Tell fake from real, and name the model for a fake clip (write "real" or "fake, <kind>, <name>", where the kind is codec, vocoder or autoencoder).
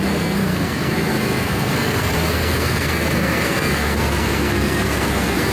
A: fake, codec, SNAC